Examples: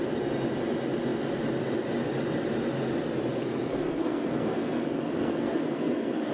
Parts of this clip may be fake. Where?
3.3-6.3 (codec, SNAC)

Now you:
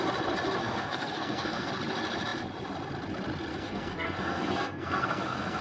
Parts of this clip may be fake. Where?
0.6-1.7 (codec, SNAC); 3.5-5.6